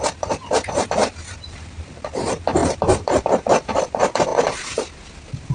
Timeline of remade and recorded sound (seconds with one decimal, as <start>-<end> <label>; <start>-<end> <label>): 0.0-1.0 remade; 1.0-1.5 recorded; 1.5-4.3 remade; 4.3-5.5 recorded